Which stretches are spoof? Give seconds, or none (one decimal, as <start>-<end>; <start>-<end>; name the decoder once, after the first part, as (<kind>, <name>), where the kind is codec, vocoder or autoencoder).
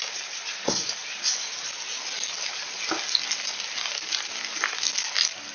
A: none